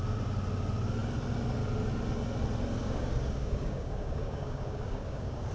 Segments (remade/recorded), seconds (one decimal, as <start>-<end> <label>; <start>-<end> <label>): 0.0-2.8 recorded; 2.8-5.5 remade